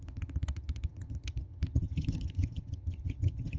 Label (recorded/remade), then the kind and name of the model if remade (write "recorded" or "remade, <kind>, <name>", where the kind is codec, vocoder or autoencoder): remade, vocoder, HiFi-GAN